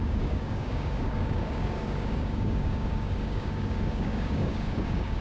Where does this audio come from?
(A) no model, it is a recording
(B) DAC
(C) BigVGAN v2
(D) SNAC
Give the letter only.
B